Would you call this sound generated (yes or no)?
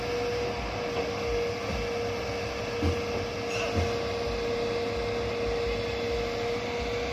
no